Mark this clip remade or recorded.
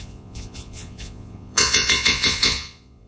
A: remade